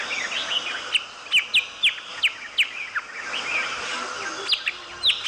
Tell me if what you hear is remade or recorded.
recorded